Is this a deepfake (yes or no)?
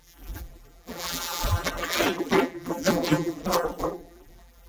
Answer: yes